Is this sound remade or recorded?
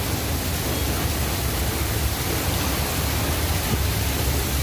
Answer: recorded